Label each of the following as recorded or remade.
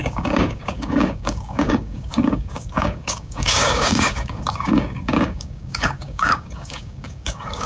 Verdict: remade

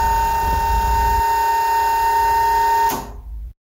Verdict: recorded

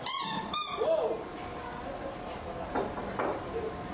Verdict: recorded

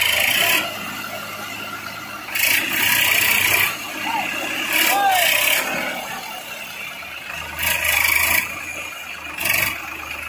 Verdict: recorded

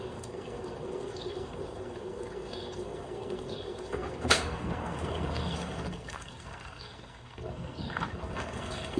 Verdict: remade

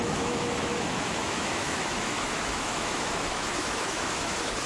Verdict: remade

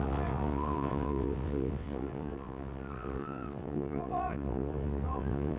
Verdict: remade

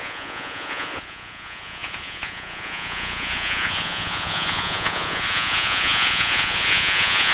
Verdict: remade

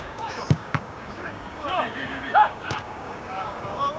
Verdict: remade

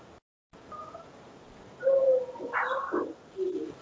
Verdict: recorded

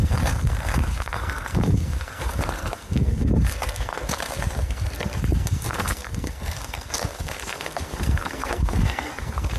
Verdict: remade